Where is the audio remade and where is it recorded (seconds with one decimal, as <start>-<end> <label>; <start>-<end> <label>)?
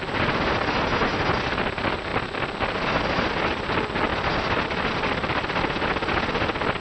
0.0-4.1 recorded; 4.1-6.8 remade